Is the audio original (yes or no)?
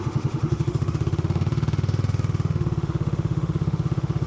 no